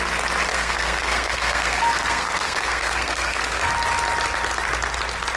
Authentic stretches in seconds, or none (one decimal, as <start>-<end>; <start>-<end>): 0.0-0.5; 3.7-5.4